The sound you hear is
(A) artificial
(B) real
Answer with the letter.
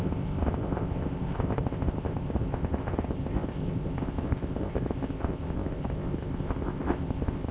A